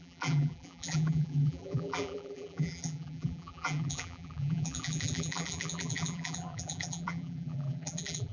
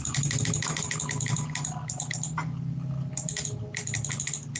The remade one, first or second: first